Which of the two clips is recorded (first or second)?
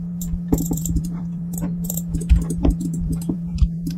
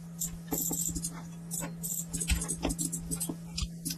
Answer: second